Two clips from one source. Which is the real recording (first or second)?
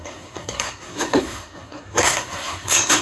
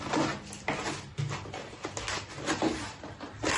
second